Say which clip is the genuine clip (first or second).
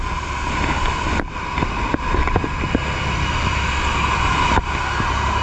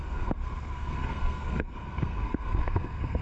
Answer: first